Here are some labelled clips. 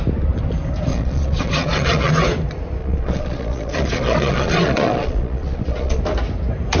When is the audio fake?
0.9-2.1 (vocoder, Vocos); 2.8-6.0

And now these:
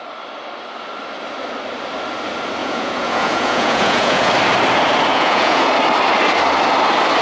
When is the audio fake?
2.6-4.3 (vocoder, Vocos); 5.1-5.7

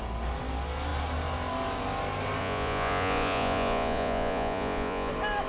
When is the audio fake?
2.4-5.1 (vocoder, Vocos)

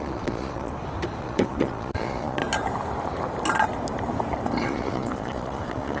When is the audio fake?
0.0-0.7 (vocoder, Vocos); 1.2-2.4; 4.6-6.0

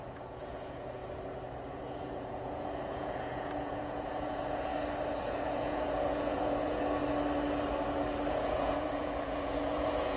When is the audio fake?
0.0-1.0 (vocoder, Vocos); 1.7-4.7; 5.2-7.0; 8.3-10.2

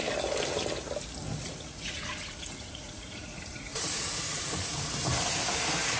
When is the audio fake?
1.3-4.9 (vocoder, Vocos)

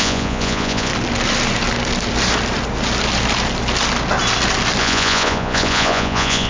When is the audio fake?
0.0-0.9 (vocoder, Vocos); 4.8-6.5

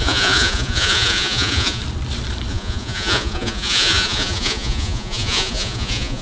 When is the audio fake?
0.0-1.8 (vocoder, Vocos); 2.5-6.2